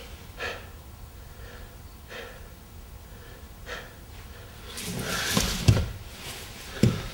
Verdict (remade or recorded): recorded